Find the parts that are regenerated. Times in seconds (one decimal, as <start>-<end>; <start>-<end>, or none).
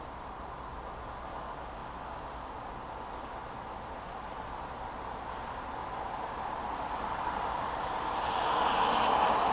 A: 5.8-8.5